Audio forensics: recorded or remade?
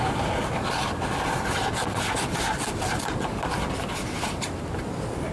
recorded